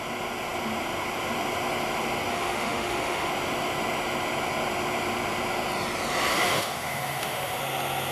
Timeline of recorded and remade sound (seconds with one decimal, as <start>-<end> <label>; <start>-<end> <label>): 0.0-2.3 recorded; 2.3-3.3 remade; 3.3-6.3 recorded; 6.3-7.6 remade; 7.6-8.1 recorded